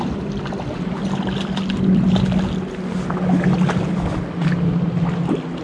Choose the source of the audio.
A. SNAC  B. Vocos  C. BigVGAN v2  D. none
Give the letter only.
D